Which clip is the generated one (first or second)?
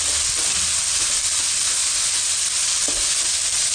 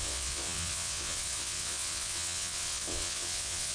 second